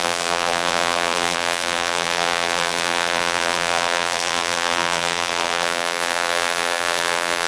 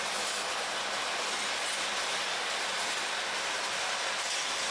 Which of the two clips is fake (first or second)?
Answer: first